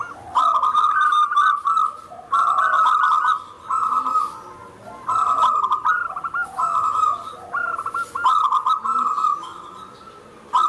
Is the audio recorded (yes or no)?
yes